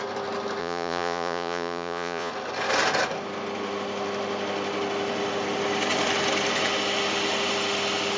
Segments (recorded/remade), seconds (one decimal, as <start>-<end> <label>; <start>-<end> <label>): 0.0-0.6 recorded; 0.6-2.3 remade; 2.3-8.2 recorded